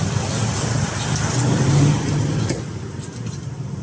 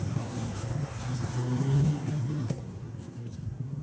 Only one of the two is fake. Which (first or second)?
second